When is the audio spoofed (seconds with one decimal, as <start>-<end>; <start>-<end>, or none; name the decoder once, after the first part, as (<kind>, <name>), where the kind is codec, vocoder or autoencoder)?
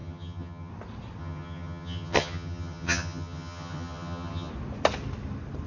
0.0-0.7 (vocoder, HiFi-GAN); 1.2-4.5